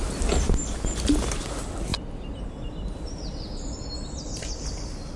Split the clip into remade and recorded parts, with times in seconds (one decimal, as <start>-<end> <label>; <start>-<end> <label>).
0.0-5.2 recorded